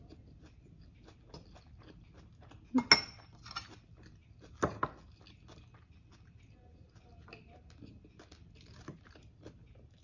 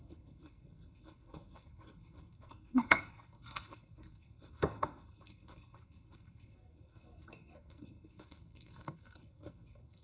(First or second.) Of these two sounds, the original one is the first